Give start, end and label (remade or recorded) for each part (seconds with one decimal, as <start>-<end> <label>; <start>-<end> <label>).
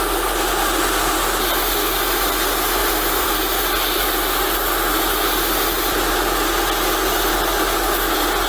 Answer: 0.0-2.8 recorded; 2.8-3.6 remade; 3.6-8.5 recorded